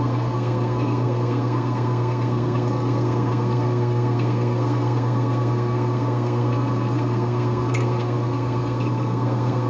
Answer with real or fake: fake